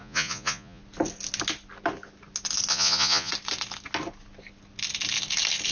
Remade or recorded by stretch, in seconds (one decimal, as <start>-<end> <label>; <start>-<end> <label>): 0.0-0.8 remade; 0.8-2.7 recorded; 2.7-3.3 remade; 3.3-5.7 recorded